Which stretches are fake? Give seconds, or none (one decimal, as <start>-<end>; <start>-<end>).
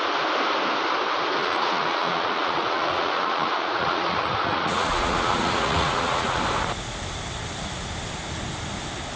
1.4-6.4